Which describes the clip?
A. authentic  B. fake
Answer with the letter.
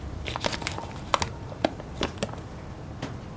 A